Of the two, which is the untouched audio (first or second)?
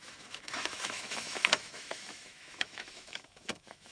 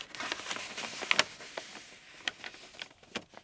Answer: second